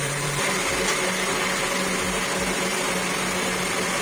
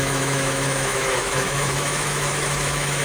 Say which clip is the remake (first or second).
second